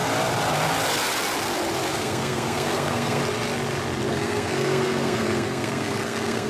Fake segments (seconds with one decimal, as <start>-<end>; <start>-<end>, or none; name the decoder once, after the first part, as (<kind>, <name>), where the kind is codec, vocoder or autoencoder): 1.9-3.2 (codec, SNAC); 4.1-6.5